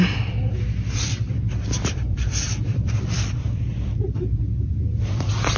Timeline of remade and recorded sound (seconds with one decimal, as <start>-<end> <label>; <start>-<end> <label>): 0.0-5.6 remade